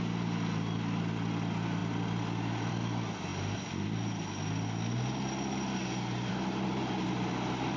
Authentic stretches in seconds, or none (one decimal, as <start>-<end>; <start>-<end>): 0.0-7.8